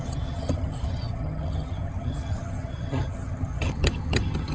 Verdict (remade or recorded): remade